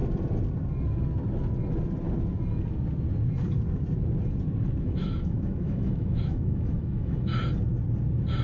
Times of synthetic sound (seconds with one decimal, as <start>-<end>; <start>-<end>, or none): 4.8-7.3